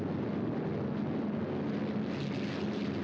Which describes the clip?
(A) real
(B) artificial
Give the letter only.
A